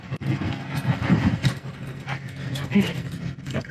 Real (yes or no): no